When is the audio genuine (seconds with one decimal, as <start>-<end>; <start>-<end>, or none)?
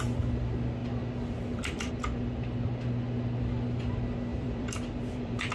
0.0-0.8; 1.9-4.3